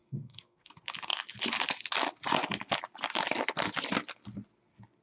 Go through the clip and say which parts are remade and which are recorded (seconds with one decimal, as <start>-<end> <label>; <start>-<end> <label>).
0.0-0.7 remade; 0.7-5.0 recorded